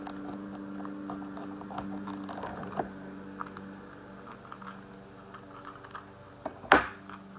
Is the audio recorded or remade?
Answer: recorded